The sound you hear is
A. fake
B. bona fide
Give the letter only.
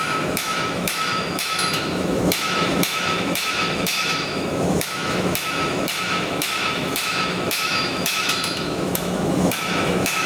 A